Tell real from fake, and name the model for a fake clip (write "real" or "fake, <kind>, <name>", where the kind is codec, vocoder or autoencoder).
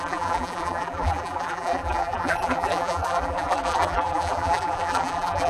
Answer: fake, vocoder, BigVGAN v2